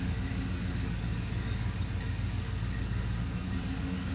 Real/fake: fake